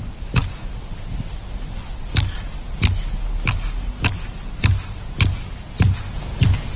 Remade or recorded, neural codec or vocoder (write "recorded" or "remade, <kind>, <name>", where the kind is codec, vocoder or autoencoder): recorded